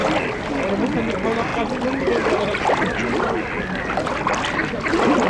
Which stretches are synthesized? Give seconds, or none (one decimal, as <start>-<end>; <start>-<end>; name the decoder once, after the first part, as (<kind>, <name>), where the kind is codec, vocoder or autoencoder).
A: none

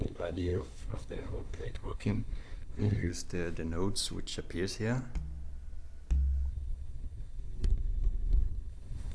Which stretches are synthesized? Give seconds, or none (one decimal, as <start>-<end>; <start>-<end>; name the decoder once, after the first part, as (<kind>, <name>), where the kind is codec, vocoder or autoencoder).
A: 0.0-3.1 (codec, SNAC); 6.5-9.1

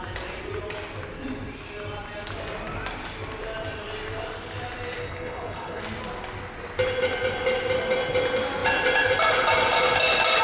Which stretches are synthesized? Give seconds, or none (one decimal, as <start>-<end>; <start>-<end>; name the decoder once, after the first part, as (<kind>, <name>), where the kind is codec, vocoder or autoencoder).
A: 5.0-5.8 (codec, HILCodec)

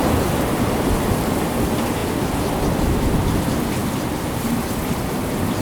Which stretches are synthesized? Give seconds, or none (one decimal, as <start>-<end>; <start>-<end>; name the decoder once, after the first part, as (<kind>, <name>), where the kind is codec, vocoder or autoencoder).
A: 0.0-2.0 (vocoder, BigVGAN v2); 2.8-5.6

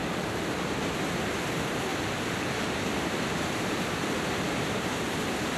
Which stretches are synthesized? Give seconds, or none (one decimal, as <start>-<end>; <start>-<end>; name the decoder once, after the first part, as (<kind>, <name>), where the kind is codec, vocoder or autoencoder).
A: 0.0-0.9 (vocoder, BigVGAN v2); 1.9-5.6